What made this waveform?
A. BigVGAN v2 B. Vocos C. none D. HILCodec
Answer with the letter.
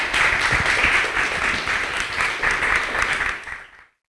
C